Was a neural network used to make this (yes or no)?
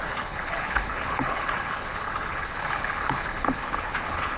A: yes